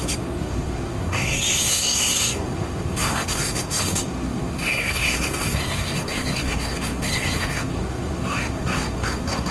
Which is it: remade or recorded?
remade